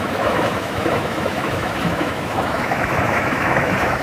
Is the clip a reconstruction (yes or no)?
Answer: yes